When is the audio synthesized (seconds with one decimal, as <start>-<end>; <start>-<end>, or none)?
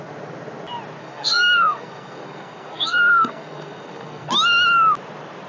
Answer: 1.0-4.3